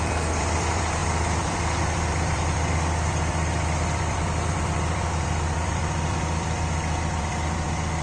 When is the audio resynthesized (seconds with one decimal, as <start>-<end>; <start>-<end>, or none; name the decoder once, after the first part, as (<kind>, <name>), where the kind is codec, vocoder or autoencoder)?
0.0-8.0 (vocoder, BigVGAN v2)